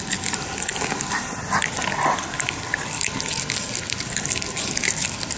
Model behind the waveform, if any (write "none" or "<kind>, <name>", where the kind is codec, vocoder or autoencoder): none